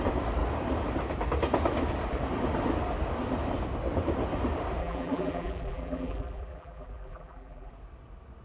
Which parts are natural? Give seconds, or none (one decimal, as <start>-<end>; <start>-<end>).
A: 0.0-4.8; 7.7-8.4